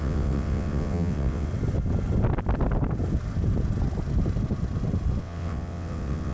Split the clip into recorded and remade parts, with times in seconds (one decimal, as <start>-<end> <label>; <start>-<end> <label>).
0.0-1.5 remade; 1.5-5.2 recorded; 5.2-6.3 remade